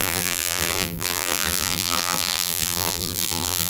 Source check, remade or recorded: remade